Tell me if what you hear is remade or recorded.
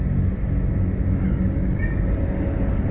recorded